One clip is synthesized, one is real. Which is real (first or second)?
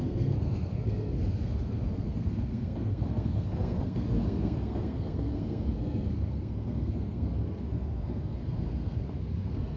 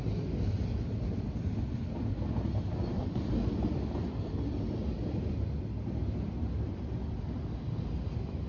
second